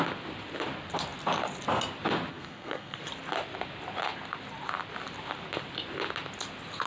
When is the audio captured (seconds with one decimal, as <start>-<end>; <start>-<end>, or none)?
0.0-2.3; 3.0-6.9

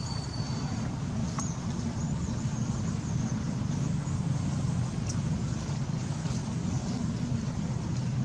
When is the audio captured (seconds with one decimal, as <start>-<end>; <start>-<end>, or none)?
0.0-8.2